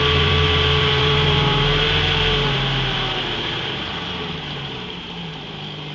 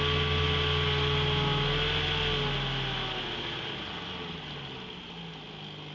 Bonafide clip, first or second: second